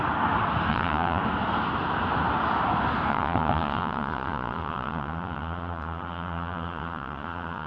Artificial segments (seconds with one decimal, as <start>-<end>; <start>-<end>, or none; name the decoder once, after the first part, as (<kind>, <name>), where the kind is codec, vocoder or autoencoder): 0.7-1.2 (vocoder, Vocos); 3.1-7.7